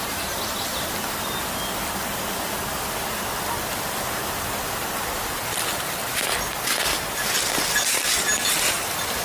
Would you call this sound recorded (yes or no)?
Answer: yes